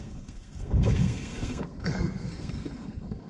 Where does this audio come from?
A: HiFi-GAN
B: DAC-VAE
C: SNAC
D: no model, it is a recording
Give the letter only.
C